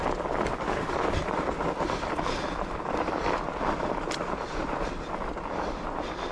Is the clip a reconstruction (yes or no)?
yes